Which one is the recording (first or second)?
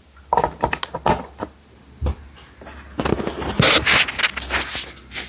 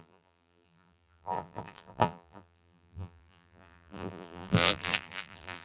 first